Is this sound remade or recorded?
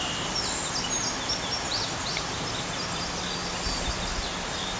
recorded